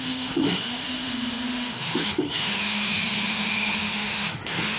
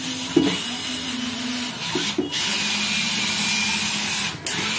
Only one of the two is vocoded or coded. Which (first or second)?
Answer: first